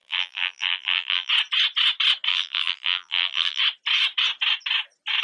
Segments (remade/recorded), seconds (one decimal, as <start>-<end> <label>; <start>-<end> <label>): 0.0-1.3 remade; 1.3-2.3 recorded; 2.3-3.6 remade; 3.6-5.2 recorded